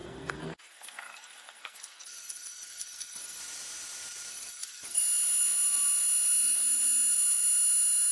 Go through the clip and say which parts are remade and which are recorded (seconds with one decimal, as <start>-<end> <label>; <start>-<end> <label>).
0.0-3.4 remade; 3.4-4.3 recorded; 4.3-5.0 remade; 5.0-8.1 recorded